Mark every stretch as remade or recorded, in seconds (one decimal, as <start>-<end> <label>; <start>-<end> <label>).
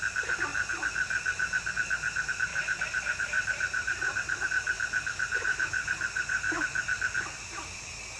0.0-2.5 recorded; 2.5-4.5 remade; 4.5-5.8 recorded; 5.8-6.6 remade; 6.6-8.2 recorded